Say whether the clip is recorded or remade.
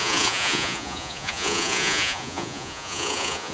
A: remade